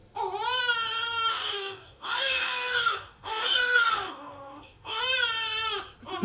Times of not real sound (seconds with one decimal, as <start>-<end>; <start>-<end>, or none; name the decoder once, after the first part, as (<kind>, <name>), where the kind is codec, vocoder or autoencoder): 1.3-5.0 (codec, DAC)